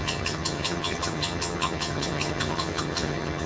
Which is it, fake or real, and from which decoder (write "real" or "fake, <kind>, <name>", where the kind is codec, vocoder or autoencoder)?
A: fake, vocoder, HiFi-GAN